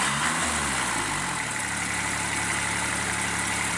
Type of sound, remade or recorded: recorded